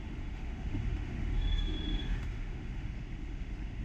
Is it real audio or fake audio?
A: fake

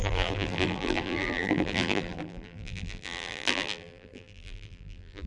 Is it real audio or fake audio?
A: fake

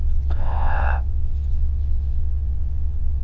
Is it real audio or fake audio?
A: fake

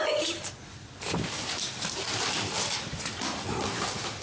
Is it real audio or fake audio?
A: real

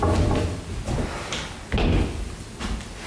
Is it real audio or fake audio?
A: real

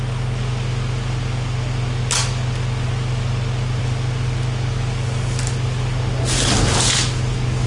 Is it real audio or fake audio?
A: real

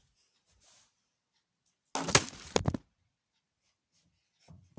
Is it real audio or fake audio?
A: real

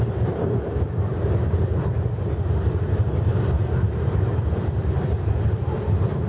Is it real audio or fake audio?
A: fake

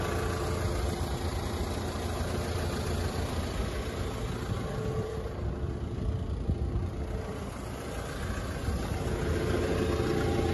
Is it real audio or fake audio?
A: real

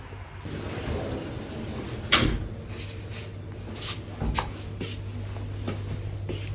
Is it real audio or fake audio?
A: real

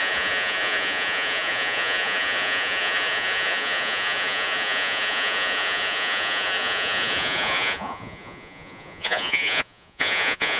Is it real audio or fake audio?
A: fake